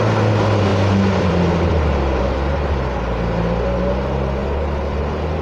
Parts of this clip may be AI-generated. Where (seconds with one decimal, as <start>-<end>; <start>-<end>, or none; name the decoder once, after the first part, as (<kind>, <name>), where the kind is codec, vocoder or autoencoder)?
0.7-2.2 (vocoder, BigVGAN v2); 4.4-5.0